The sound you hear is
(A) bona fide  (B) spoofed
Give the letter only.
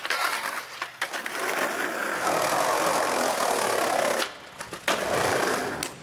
A